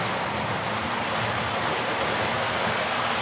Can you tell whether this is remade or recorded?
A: recorded